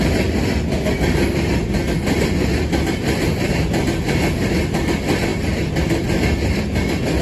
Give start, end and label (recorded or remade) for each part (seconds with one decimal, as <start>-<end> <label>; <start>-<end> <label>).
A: 0.0-7.2 recorded

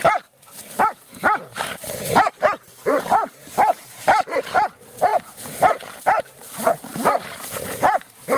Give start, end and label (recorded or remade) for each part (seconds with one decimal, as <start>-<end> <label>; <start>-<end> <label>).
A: 0.0-8.4 remade

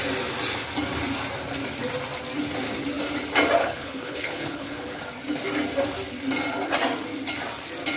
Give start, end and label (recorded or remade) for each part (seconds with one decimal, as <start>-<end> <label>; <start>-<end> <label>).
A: 0.0-3.6 recorded; 3.6-5.0 remade; 5.0-8.0 recorded

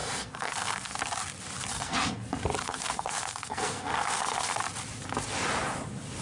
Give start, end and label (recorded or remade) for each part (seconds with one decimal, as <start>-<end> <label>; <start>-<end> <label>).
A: 0.0-1.0 remade; 1.0-1.7 recorded; 1.7-2.2 remade; 2.2-2.6 recorded; 2.6-4.6 remade; 4.6-6.2 recorded

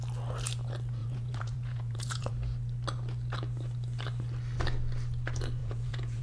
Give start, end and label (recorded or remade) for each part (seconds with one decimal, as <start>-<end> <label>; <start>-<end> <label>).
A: 0.0-1.0 recorded; 1.0-2.3 remade; 2.3-5.6 recorded; 5.6-6.2 remade